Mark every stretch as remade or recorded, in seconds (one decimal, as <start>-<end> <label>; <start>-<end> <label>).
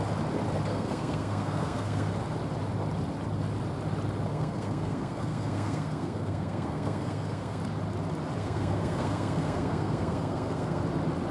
0.0-0.7 recorded; 0.7-2.1 remade; 2.1-4.3 recorded; 4.3-7.6 remade; 7.6-8.4 recorded; 8.4-10.8 remade; 10.8-11.3 recorded